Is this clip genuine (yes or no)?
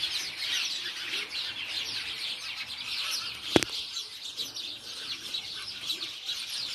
yes